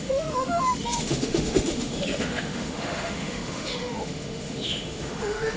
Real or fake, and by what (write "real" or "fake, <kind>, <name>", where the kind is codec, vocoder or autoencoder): fake, autoencoder, DAC-VAE